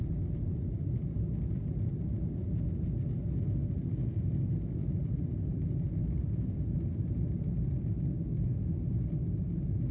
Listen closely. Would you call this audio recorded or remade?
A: recorded